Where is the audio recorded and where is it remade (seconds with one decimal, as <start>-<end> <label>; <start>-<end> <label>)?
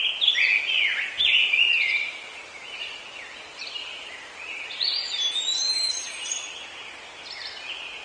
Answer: 0.0-0.9 recorded; 0.9-3.0 remade; 3.0-3.5 recorded; 3.5-6.5 remade; 6.5-8.0 recorded